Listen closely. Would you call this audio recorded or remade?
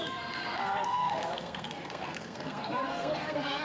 remade